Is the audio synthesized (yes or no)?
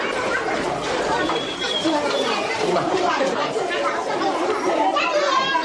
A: yes